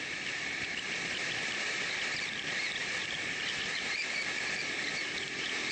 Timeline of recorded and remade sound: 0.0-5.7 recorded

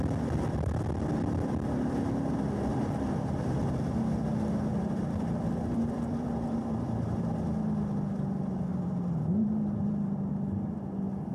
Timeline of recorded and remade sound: 0.0-2.7 recorded; 2.7-4.0 remade; 4.0-4.7 recorded; 4.7-7.3 remade; 7.3-8.7 recorded; 8.7-10.3 remade; 10.3-11.3 recorded

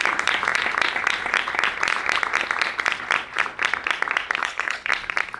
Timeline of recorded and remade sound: 0.0-4.4 recorded; 4.4-4.9 remade; 4.9-5.4 recorded

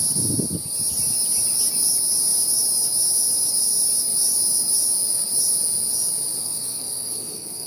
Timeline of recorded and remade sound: 0.0-6.4 recorded; 6.4-7.7 remade

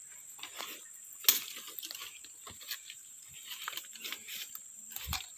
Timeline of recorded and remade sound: 0.0-0.6 remade; 0.6-2.0 recorded; 2.0-5.4 remade

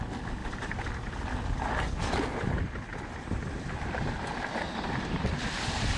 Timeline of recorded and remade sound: 0.0-0.4 recorded; 0.4-1.7 remade; 1.7-2.9 recorded; 2.9-6.0 remade

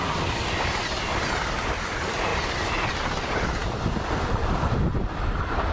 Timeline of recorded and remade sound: 0.0-5.7 remade

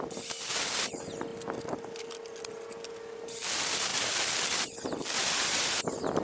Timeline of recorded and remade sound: 0.0-6.2 recorded